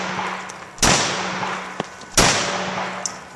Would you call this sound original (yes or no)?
yes